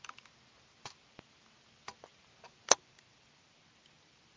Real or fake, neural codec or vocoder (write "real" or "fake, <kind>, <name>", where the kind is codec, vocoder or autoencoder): real